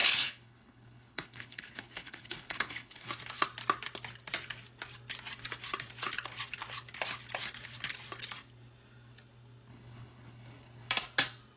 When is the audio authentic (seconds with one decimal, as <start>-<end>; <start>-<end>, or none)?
3.1-9.7; 10.9-11.6